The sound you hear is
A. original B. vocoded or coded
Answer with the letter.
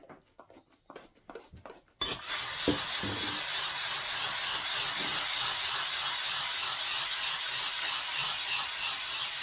A